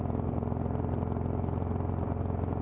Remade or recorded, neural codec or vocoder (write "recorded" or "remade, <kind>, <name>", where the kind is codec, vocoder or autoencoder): recorded